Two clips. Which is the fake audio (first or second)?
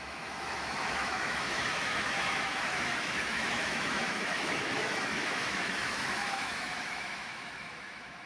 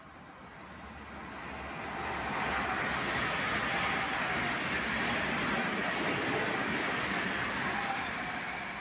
first